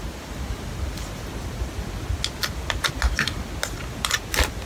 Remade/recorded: recorded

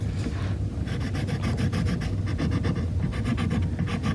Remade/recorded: recorded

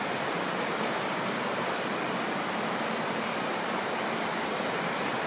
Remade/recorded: recorded